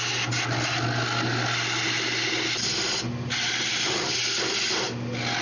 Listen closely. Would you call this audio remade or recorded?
recorded